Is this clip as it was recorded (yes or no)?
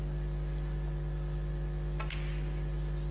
yes